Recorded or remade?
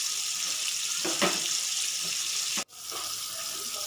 remade